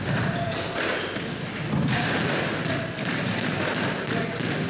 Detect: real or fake real